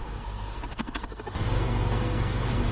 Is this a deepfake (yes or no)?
yes